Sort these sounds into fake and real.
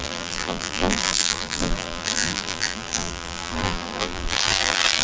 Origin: fake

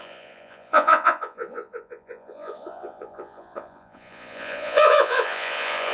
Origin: fake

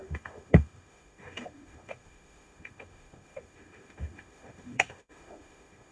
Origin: fake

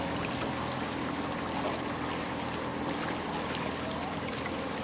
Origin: real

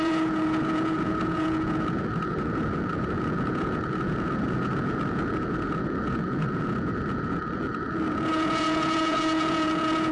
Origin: fake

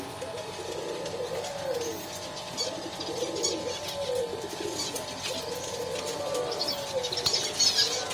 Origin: real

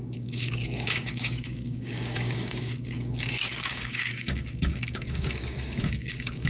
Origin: fake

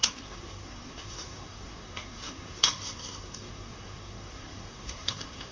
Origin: fake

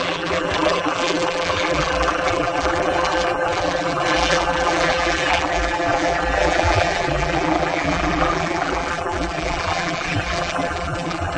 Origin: fake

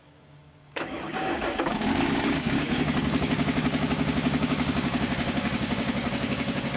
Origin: fake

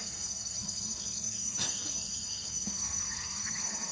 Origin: fake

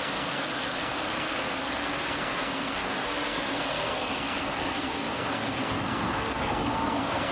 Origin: fake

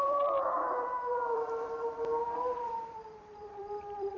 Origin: fake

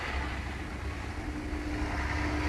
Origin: real